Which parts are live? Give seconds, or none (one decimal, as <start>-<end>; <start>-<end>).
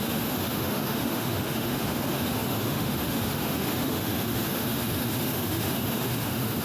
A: none